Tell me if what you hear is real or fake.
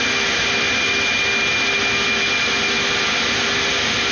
real